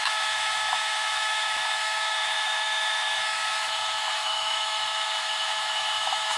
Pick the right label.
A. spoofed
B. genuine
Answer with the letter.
A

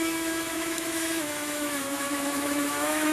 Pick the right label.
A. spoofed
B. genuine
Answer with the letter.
A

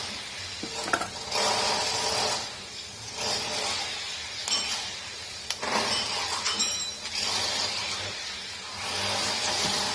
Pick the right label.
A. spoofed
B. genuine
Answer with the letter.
B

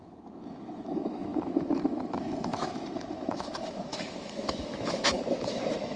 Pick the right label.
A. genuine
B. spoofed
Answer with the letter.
B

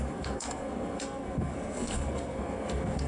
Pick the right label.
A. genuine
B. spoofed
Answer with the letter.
B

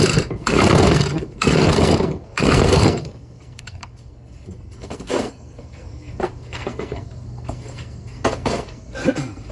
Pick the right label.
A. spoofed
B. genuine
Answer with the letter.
A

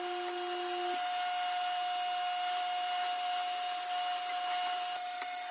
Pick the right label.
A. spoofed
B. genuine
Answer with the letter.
B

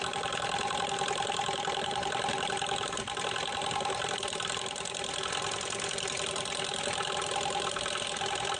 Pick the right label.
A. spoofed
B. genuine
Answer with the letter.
B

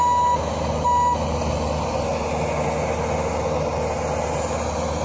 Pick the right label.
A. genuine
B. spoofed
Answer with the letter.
A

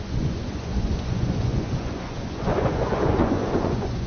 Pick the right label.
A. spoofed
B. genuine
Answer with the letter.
A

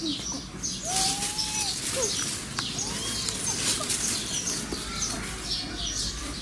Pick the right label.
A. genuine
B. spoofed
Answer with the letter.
A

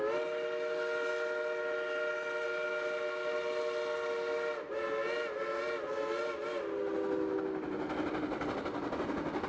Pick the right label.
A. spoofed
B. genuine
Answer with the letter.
B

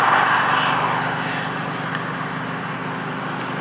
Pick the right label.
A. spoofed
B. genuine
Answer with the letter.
B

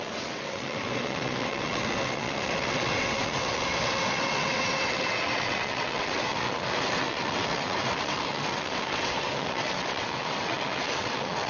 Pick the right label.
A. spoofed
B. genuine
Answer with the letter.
A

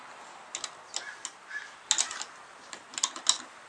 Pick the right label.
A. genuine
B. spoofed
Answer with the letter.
A